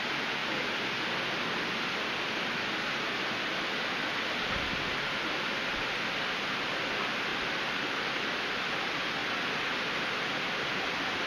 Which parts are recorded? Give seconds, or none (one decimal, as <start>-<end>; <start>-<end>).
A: 0.0-7.3; 7.9-11.3